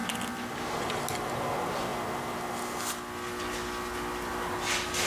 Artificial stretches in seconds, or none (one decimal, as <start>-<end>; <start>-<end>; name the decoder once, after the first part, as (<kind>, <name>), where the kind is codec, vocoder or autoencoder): none